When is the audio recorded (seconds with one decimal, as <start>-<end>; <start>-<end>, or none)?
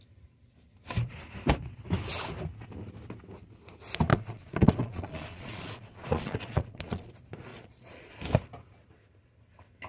0.0-4.1; 7.1-7.5; 8.1-9.9